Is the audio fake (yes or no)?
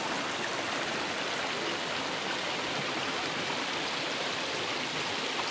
no